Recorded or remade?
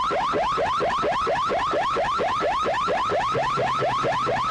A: recorded